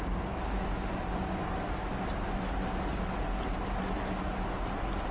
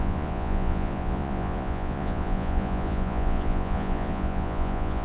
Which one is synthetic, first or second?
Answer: second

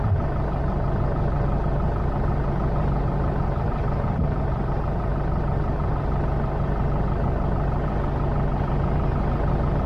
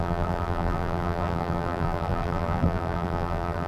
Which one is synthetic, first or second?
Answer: second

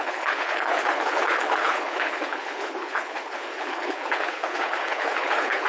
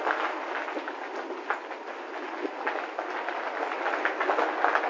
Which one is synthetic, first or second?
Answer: first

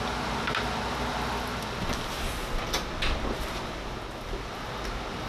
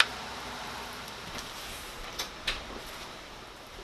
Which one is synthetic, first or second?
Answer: second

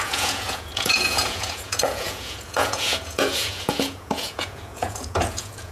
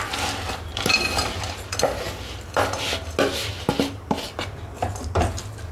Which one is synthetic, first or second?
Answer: first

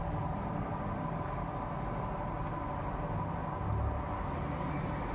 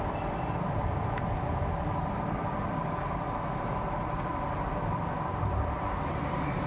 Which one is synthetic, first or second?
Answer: second